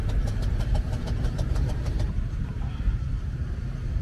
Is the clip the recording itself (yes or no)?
no